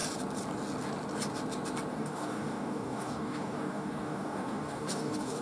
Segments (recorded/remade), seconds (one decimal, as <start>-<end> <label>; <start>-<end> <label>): 0.0-1.9 recorded; 1.9-5.4 remade